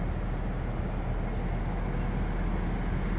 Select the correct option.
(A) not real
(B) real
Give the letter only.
B